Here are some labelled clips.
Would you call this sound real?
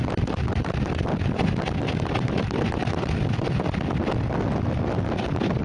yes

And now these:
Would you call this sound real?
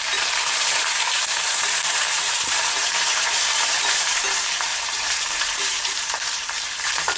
no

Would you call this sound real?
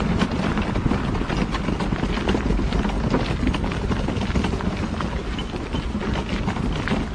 yes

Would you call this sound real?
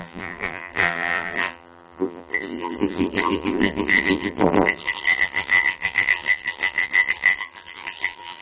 no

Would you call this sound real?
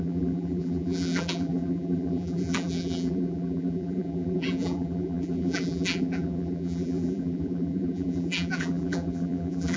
no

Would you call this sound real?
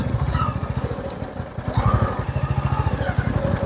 yes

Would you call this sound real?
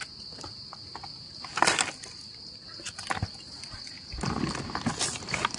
yes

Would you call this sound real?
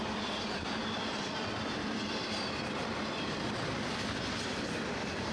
no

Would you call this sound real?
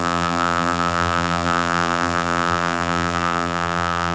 no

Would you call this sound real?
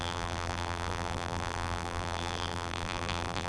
no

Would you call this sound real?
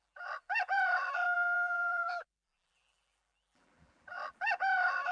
no